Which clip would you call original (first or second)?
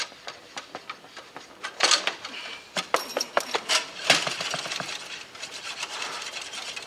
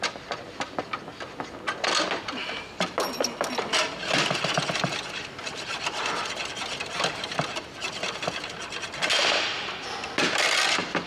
second